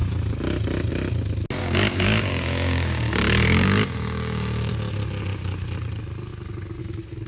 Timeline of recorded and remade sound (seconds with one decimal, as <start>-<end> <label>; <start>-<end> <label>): 0.0-1.6 recorded; 1.6-4.7 remade; 4.7-7.3 recorded